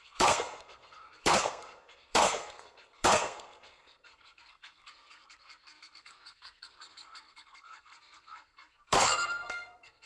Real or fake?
fake